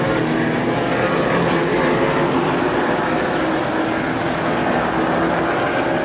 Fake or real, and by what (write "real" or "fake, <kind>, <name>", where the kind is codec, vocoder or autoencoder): real